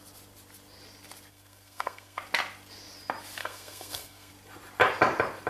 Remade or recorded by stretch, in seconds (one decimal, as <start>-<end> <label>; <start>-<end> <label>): 0.0-1.3 recorded; 1.3-2.2 remade; 2.2-3.4 recorded; 3.4-4.3 remade; 4.3-5.5 recorded